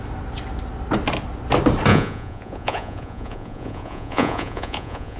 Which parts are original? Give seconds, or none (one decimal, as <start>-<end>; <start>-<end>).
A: 0.0-1.9